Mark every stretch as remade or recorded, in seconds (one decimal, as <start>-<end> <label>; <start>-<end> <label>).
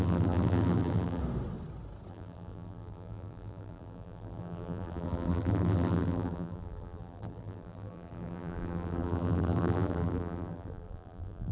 0.0-1.2 remade; 1.2-2.1 recorded; 2.1-11.5 remade